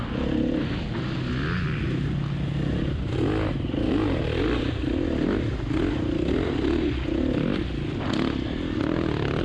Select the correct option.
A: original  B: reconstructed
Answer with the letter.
A